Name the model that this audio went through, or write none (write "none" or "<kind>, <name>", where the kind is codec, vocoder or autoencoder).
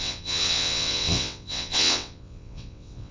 vocoder, WaveNeXt